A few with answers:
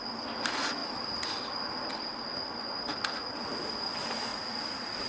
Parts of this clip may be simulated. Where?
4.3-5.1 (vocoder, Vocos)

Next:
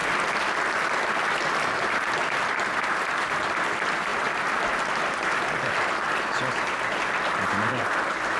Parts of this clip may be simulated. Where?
none

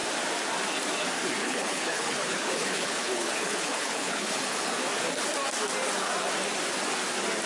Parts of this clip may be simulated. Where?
1.4-4.8 (codec, HILCodec)

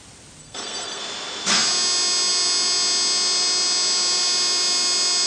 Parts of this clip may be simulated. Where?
0.4-1.0 (codec, SNAC)